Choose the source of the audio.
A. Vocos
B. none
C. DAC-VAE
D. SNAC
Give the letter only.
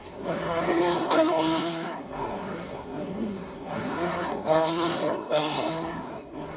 D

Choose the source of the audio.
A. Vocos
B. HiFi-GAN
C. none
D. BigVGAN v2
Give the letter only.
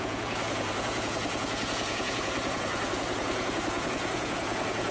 A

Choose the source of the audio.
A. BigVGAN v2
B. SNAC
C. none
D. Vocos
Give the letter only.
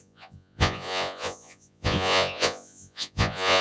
D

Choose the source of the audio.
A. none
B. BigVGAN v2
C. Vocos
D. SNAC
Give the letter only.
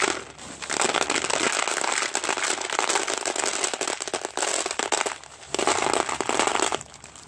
A